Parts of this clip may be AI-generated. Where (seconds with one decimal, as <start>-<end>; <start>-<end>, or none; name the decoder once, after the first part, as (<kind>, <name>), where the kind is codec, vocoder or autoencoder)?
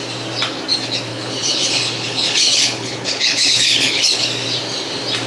1.1-4.3 (codec, HILCodec)